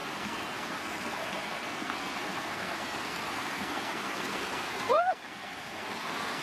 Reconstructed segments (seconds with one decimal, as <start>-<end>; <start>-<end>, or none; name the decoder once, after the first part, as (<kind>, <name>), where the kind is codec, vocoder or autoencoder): 0.0-6.4 (codec, SNAC)